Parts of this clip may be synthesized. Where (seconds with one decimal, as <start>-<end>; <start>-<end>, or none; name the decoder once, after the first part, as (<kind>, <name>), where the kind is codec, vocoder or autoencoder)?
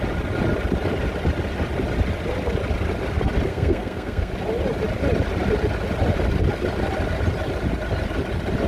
3.5-4.3 (codec, SNAC)